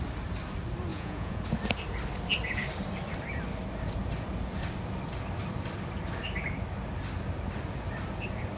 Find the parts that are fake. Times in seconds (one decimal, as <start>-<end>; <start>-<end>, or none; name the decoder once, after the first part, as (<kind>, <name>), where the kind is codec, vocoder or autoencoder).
0.9-1.4 (vocoder, Vocos)